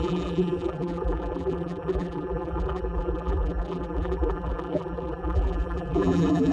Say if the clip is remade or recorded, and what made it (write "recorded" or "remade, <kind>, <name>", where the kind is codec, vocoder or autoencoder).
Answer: remade, vocoder, BigVGAN v2